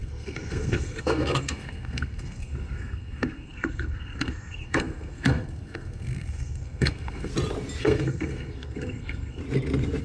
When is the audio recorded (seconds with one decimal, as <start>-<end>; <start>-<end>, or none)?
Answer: 7.3-7.8; 9.4-10.0